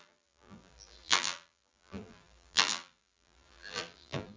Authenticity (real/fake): fake